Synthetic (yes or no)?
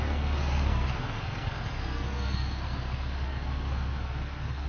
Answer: yes